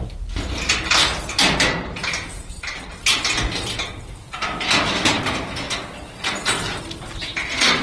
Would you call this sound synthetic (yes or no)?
no